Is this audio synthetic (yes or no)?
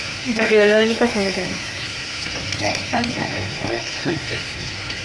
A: yes